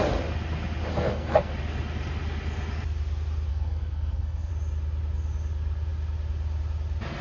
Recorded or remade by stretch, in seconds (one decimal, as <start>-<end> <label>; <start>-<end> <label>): 0.0-0.9 recorded; 0.9-1.5 remade; 1.5-3.5 recorded; 3.5-4.5 remade; 4.5-7.2 recorded